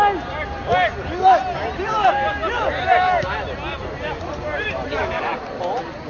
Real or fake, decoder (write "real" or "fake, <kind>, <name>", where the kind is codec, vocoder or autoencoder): real